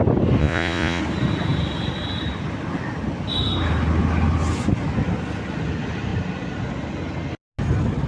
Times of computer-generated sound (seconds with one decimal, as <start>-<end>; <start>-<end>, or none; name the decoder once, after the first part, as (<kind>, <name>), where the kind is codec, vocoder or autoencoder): 0.4-1.0 (vocoder, Vocos)